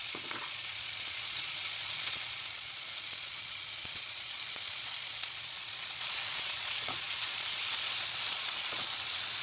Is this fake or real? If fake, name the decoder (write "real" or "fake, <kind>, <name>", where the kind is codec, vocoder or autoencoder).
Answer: fake, vocoder, Vocos